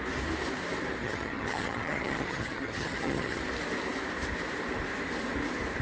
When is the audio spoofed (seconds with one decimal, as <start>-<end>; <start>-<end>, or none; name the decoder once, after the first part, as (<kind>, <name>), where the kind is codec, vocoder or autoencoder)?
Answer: 1.0-3.4 (vocoder, HiFi-GAN)

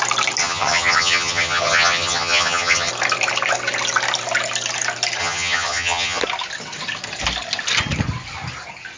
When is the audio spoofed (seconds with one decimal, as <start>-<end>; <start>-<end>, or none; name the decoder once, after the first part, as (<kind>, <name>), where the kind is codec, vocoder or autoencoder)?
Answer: 0.4-2.9 (vocoder, HiFi-GAN); 5.2-6.2

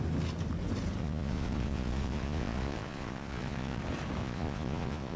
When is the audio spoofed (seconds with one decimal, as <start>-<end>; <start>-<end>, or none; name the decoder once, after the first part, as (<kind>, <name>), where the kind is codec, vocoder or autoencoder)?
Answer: 1.0-3.8 (vocoder, Vocos); 4.2-5.2

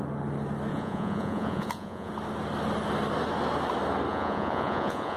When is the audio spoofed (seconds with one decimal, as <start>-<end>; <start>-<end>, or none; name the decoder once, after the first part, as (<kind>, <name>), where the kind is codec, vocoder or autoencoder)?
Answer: 0.7-2.1 (vocoder, Vocos); 4.1-5.2

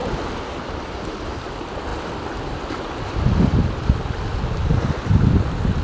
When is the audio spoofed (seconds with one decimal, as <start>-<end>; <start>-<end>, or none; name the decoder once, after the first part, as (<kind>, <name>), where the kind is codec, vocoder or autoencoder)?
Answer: none

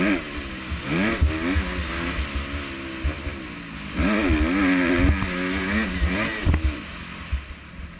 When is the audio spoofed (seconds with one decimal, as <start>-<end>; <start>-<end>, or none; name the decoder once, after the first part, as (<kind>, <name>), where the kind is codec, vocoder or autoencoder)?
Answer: none

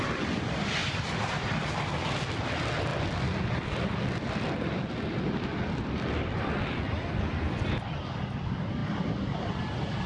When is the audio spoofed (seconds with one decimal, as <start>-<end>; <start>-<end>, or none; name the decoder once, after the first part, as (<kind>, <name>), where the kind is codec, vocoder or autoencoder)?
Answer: 0.8-1.7 (vocoder, BigVGAN v2); 2.9-6.6; 8.8-9.6